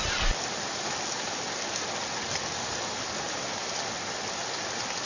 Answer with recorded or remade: recorded